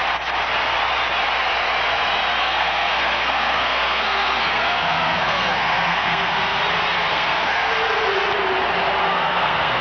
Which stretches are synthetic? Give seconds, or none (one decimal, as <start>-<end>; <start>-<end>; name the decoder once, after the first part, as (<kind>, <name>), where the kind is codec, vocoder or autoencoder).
2.4-6.6 (codec, SNAC); 7.1-7.7; 9.0-9.8